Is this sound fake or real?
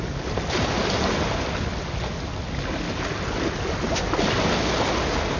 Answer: real